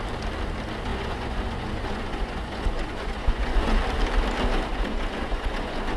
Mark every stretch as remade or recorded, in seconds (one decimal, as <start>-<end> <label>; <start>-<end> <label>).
0.0-0.9 recorded; 0.9-3.8 remade; 3.8-4.7 recorded; 4.7-6.0 remade